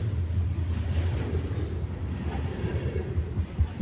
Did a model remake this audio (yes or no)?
no